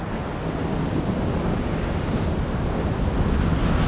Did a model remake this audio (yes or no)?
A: no